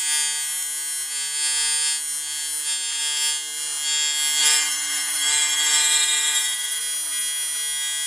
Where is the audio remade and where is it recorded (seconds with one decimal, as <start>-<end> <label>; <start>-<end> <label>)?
0.0-4.4 recorded; 4.4-6.8 remade; 6.8-8.1 recorded